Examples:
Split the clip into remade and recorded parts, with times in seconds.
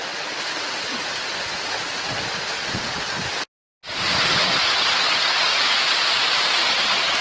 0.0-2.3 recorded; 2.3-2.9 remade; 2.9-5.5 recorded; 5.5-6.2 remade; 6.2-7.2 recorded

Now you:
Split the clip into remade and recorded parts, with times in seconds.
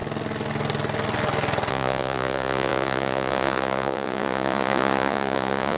0.0-1.7 recorded; 1.7-5.8 remade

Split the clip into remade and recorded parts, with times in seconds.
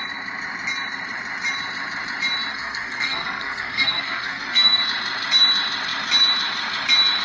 0.0-2.5 recorded; 2.5-4.8 remade; 4.8-7.2 recorded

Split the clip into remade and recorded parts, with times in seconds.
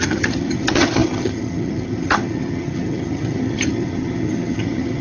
0.0-5.0 remade